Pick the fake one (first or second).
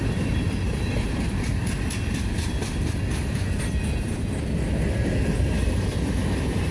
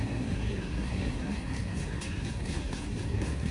second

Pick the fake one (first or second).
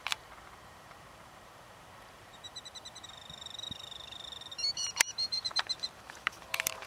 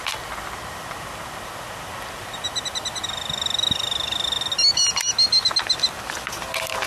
first